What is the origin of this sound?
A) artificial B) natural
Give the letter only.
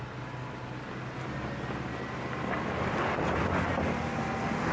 B